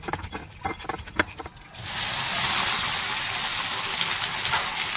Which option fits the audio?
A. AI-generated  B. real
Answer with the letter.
B